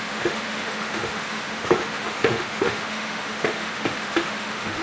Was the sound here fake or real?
fake